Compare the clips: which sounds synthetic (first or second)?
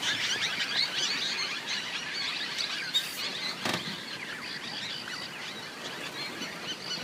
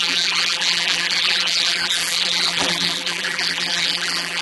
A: second